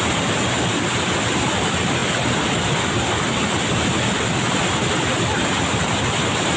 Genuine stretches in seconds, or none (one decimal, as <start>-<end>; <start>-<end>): 0.0-6.6